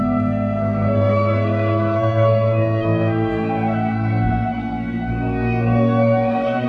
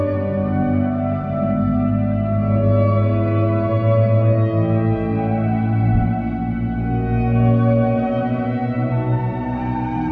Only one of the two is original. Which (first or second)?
second